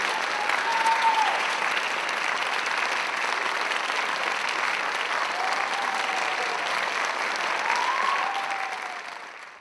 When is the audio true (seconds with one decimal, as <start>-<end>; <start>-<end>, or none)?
0.0-0.7; 1.6-9.6